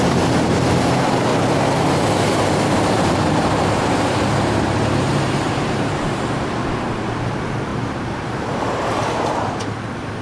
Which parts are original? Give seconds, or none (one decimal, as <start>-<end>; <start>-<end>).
0.0-1.3; 6.2-7.7; 9.5-10.2